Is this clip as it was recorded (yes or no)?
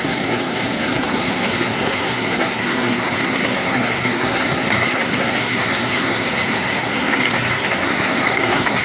no